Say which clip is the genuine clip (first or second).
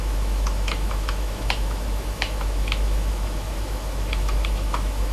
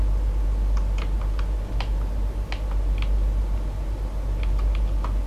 second